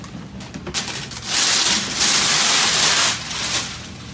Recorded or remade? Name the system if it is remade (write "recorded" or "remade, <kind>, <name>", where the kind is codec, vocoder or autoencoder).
recorded